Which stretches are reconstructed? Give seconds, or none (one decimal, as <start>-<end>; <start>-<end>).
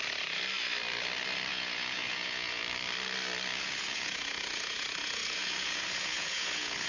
1.5-2.6; 3.5-6.9